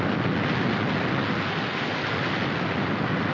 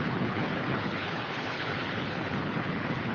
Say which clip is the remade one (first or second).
second